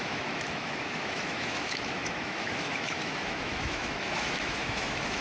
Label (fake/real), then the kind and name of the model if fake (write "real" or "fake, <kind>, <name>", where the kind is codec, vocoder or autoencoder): fake, autoencoder, DAC-VAE